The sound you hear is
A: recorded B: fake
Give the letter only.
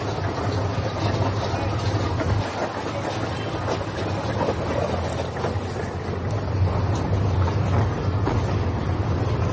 A